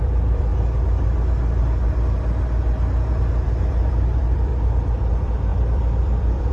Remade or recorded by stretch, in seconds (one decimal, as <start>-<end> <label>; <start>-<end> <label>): 0.0-0.5 remade; 0.5-3.1 recorded; 3.1-4.5 remade; 4.5-5.1 recorded; 5.1-6.5 remade